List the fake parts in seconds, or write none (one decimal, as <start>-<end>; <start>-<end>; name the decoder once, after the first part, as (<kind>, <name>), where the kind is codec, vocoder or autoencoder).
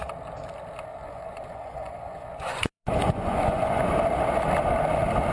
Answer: 0.9-3.9 (vocoder, Vocos)